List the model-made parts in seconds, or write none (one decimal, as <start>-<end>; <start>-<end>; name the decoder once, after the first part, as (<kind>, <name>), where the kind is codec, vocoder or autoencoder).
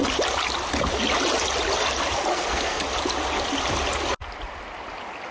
2.3-2.8 (codec, SNAC)